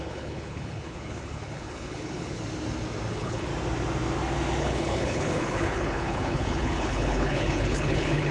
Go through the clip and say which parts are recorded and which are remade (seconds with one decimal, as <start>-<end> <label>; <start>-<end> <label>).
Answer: 0.0-2.4 remade; 2.4-3.1 recorded; 3.1-3.5 remade; 3.5-4.6 recorded; 4.6-8.3 remade